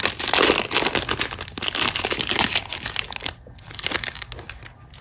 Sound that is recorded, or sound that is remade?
recorded